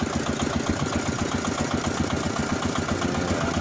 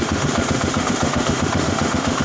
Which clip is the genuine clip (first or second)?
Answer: first